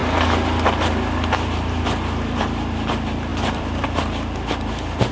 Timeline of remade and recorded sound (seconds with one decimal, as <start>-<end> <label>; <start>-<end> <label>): 0.0-3.3 recorded; 3.3-4.0 remade; 4.0-5.1 recorded